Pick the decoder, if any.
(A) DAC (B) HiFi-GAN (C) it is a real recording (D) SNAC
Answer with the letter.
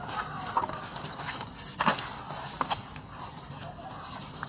C